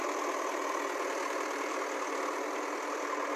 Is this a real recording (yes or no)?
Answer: yes